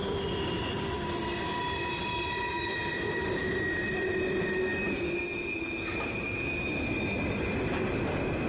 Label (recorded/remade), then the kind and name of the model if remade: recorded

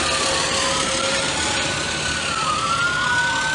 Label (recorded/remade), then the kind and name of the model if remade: recorded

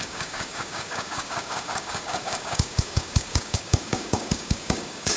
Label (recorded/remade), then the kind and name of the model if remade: remade, codec, DAC